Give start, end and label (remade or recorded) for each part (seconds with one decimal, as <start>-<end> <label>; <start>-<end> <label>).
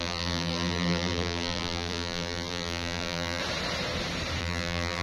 0.0-3.4 remade; 3.4-4.4 recorded; 4.4-5.0 remade